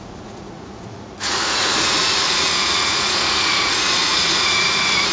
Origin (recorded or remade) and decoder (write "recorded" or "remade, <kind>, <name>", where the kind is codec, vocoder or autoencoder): remade, vocoder, Vocos